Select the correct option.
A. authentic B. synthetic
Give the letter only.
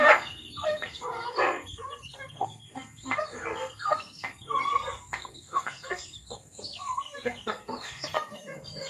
B